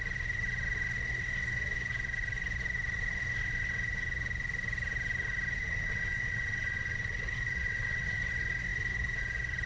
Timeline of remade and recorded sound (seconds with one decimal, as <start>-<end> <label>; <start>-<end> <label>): 0.0-5.6 recorded; 5.6-8.2 remade; 8.2-9.7 recorded

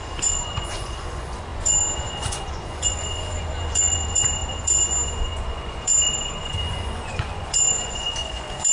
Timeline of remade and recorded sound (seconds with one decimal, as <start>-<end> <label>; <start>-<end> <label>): 0.0-8.7 remade

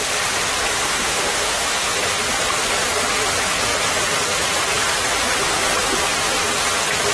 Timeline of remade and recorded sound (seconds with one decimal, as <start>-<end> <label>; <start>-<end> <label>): 0.0-0.9 recorded; 0.9-2.0 remade; 2.0-7.1 recorded